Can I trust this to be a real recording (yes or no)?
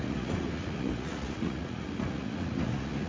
no